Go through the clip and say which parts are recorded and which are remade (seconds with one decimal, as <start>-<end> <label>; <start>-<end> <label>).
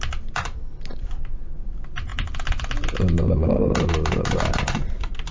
0.0-5.3 recorded